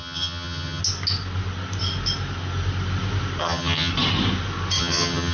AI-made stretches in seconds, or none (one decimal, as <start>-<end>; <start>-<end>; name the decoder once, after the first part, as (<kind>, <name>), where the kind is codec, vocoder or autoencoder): 0.0-0.8 (vocoder, HiFi-GAN); 3.4-3.9; 4.8-5.3